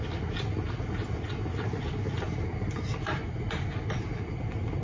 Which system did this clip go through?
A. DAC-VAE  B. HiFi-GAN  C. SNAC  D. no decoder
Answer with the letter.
D